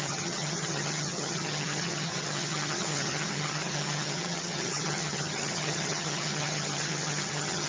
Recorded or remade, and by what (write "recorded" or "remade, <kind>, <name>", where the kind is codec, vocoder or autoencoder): remade, vocoder, HiFi-GAN